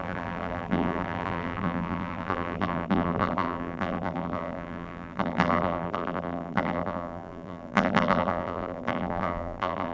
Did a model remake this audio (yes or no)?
yes